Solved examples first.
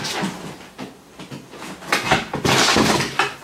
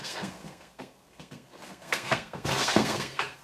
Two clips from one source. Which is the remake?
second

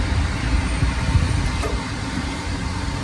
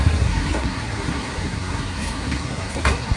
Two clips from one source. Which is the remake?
second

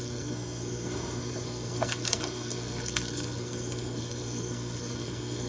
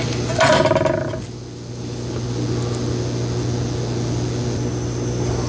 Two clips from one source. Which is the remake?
first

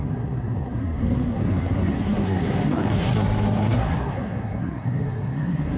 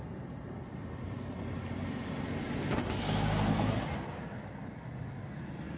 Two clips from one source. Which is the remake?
first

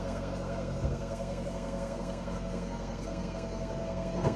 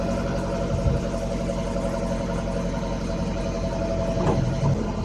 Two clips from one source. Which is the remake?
first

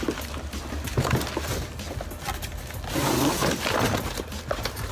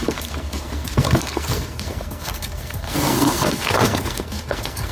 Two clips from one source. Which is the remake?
second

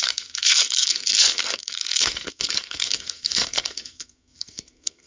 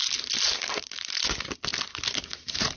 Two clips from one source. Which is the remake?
first